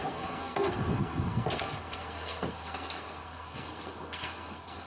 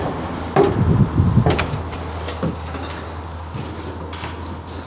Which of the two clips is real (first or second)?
second